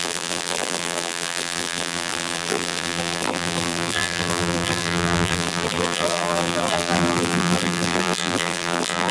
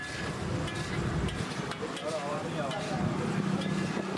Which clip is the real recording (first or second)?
second